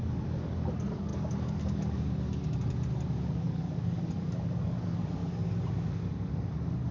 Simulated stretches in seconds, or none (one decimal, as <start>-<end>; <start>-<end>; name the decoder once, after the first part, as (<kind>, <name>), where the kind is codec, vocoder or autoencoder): 0.0-5.2 (codec, DAC); 5.7-6.9